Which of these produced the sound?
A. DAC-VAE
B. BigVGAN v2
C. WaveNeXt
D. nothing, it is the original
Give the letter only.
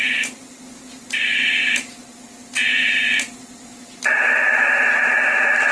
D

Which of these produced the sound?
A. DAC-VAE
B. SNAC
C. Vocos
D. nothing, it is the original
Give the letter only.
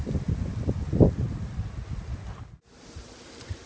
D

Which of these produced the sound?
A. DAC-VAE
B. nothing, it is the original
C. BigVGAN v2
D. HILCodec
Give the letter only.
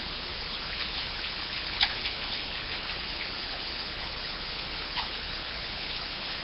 D